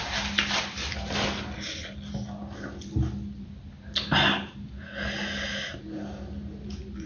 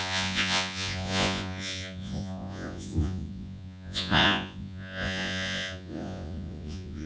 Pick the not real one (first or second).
second